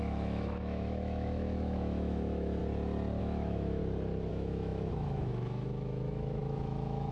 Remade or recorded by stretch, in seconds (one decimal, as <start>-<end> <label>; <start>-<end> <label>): 0.0-2.6 remade; 2.6-3.2 recorded; 3.2-3.8 remade; 3.8-4.3 recorded; 4.3-7.1 remade